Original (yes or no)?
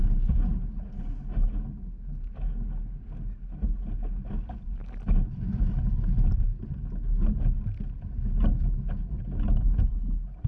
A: yes